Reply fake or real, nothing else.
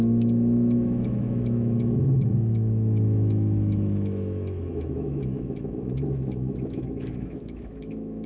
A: fake